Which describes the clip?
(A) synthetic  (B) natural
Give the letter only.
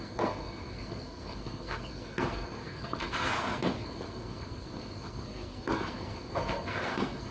A